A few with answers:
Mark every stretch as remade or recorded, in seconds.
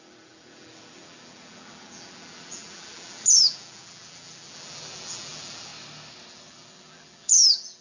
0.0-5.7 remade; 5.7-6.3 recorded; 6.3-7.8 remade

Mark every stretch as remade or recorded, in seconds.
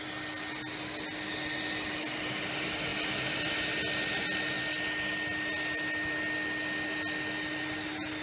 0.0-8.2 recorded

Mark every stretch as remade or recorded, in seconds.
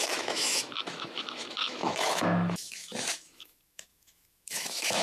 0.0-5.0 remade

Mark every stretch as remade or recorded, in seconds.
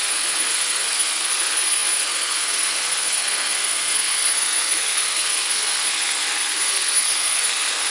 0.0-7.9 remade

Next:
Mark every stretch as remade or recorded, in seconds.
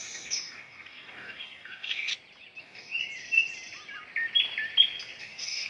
0.0-2.1 remade; 2.1-2.6 recorded; 2.6-3.0 remade; 3.0-5.2 recorded; 5.2-5.7 remade